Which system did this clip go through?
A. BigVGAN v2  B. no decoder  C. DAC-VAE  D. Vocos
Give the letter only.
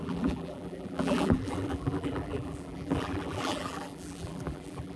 A